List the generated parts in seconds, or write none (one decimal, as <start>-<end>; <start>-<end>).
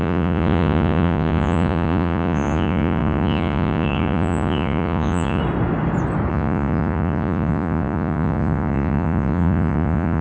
0.0-5.4; 6.3-10.2